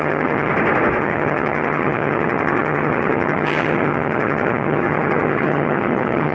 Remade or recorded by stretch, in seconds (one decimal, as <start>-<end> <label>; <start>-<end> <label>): 0.0-0.5 remade; 0.5-1.0 recorded; 1.0-6.3 remade